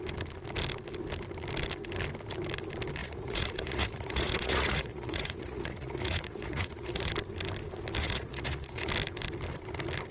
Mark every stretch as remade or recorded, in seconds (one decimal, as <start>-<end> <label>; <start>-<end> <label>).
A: 0.0-3.0 recorded; 3.0-7.1 remade; 7.1-8.0 recorded; 8.0-8.9 remade; 8.9-10.1 recorded